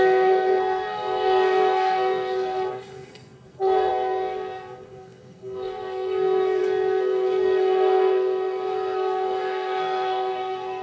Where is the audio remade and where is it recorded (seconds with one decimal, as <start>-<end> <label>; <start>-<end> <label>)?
0.0-10.8 remade

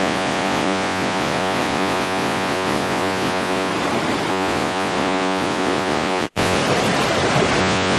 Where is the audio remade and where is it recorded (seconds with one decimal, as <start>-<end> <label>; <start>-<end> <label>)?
0.0-3.7 remade; 3.7-4.3 recorded; 4.3-6.6 remade; 6.6-7.6 recorded; 7.6-8.0 remade

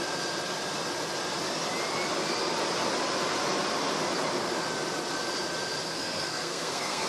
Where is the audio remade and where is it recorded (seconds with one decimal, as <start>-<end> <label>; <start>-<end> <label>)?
0.0-5.9 recorded; 5.9-7.1 remade

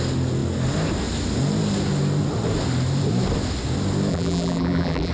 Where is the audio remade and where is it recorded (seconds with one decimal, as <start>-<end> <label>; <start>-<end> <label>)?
0.0-4.1 recorded; 4.1-5.1 remade

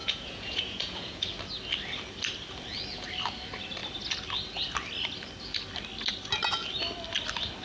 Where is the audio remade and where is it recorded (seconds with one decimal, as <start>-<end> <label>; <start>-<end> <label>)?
0.0-1.2 remade; 1.2-7.6 recorded

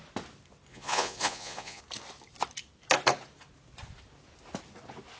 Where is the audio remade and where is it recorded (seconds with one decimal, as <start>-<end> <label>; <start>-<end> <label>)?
0.0-0.7 recorded; 0.7-1.8 remade; 1.8-5.2 recorded

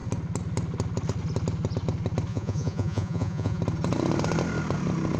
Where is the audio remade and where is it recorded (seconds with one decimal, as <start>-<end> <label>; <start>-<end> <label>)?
0.0-2.3 recorded; 2.3-3.6 remade; 3.6-5.2 recorded

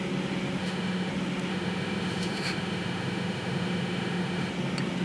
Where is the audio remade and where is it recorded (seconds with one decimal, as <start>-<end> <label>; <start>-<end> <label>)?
0.0-0.6 recorded; 0.6-1.1 remade; 1.1-1.5 recorded; 1.5-4.5 remade; 4.5-5.0 recorded